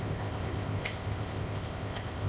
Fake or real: fake